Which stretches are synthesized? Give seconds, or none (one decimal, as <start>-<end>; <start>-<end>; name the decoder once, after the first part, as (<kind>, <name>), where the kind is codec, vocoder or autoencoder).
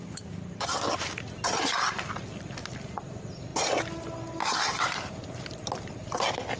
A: none